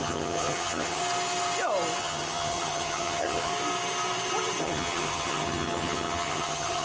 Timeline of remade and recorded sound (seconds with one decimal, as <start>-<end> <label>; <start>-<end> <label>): 0.0-1.0 remade; 1.0-2.0 recorded; 2.0-3.5 remade; 3.5-4.6 recorded; 4.6-6.8 remade